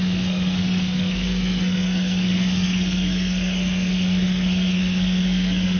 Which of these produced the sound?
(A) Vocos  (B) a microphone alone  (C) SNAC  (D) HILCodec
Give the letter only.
C